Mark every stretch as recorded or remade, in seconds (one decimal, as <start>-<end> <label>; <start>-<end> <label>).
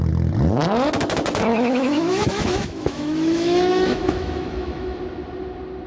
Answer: 0.0-1.5 recorded; 1.5-5.0 remade; 5.0-5.9 recorded